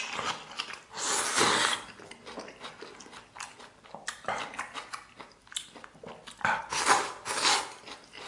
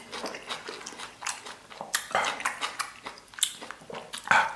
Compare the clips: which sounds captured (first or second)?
second